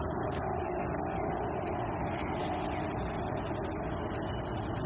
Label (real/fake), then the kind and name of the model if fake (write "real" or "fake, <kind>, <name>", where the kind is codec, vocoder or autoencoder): real